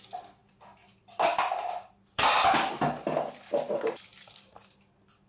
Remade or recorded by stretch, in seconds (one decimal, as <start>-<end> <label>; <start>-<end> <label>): 0.0-5.3 recorded